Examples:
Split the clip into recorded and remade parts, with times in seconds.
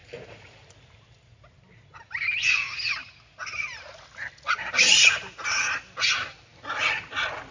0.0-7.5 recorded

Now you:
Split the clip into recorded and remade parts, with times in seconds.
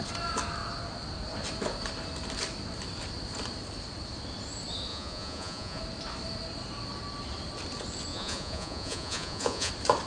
0.0-4.9 recorded; 4.9-5.8 remade; 5.8-8.1 recorded; 8.1-9.7 remade; 9.7-10.1 recorded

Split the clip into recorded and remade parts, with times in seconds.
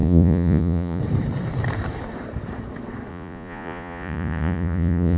0.0-1.0 remade; 1.0-3.1 recorded; 3.1-5.2 remade